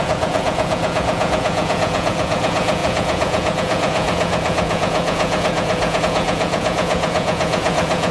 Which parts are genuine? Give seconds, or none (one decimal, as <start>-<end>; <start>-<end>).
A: none